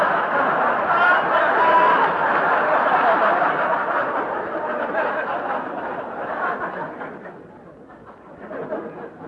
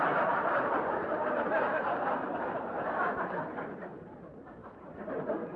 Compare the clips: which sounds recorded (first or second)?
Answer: first